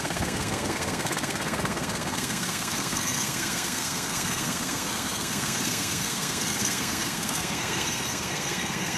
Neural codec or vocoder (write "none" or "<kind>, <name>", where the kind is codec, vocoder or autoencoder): codec, SNAC